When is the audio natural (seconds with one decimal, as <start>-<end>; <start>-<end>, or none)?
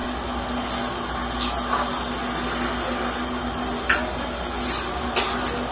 0.0-5.7